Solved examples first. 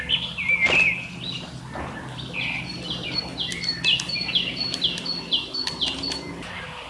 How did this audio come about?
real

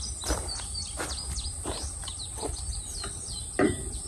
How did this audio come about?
real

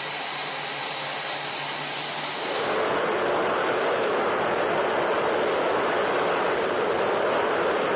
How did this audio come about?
real